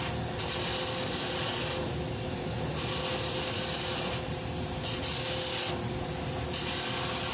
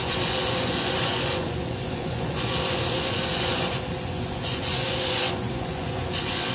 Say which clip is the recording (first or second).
first